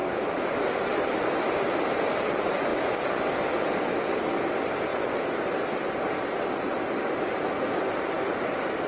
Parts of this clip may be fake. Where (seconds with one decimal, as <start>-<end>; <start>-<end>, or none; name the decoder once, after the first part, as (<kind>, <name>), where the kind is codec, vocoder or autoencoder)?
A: 0.0-2.3 (vocoder, BigVGAN v2); 2.7-4.0